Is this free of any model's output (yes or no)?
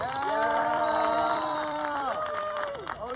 no